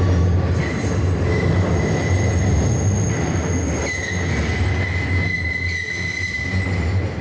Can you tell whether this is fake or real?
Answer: real